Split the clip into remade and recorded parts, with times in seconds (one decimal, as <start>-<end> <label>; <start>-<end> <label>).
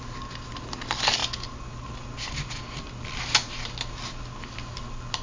0.0-5.2 recorded